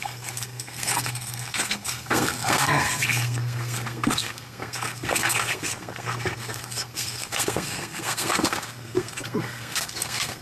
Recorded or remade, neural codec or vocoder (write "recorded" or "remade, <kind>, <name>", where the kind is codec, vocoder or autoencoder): remade, codec, SNAC